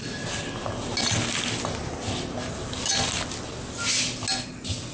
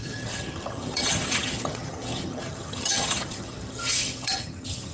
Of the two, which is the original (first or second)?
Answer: first